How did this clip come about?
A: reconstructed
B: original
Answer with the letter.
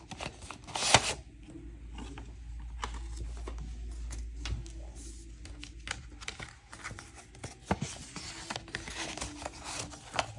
B